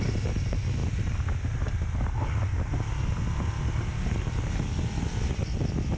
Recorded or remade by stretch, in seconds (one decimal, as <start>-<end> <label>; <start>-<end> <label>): 0.0-6.0 recorded